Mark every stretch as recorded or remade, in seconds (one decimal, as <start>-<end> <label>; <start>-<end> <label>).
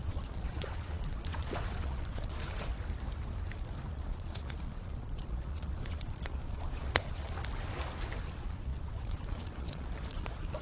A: 0.0-2.7 remade; 2.7-3.9 recorded; 3.9-7.4 remade; 7.4-8.2 recorded; 8.2-10.6 remade